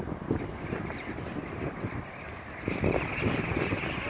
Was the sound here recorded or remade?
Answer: recorded